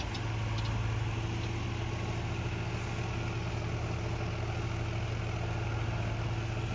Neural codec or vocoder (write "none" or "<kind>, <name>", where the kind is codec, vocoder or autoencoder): none